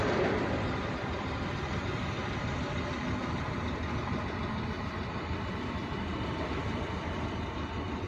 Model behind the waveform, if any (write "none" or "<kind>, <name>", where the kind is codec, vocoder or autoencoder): vocoder, BigVGAN v2